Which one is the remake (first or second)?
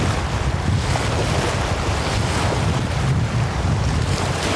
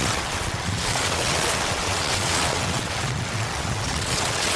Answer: second